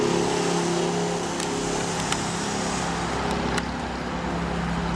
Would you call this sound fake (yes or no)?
no